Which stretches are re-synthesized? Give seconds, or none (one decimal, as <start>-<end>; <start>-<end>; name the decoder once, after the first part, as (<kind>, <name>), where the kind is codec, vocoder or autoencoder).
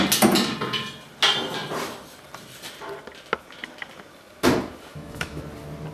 4.9-5.4 (autoencoder, DAC-VAE)